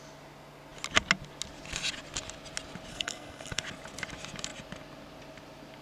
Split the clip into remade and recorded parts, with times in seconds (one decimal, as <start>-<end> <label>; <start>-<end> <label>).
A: 0.0-2.9 recorded; 2.9-3.6 remade; 3.6-5.8 recorded